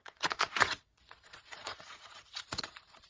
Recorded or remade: remade